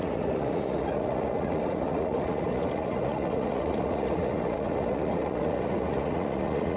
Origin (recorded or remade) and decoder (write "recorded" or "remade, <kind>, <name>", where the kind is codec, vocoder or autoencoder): remade, vocoder, Vocos